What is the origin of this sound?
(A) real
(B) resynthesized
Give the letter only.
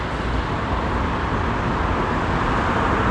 A